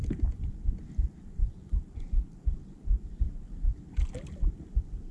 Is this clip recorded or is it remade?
recorded